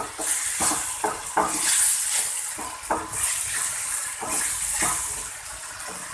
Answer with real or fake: real